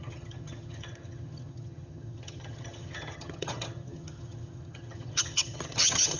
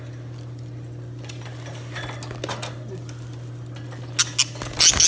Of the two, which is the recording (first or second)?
second